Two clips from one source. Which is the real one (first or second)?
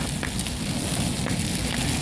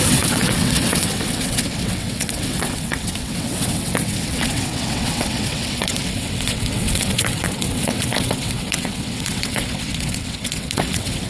first